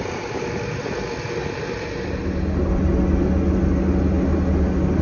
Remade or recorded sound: recorded